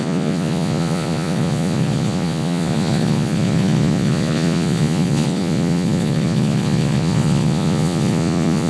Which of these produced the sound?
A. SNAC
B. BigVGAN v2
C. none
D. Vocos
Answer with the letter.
D